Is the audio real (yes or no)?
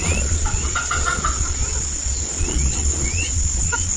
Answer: no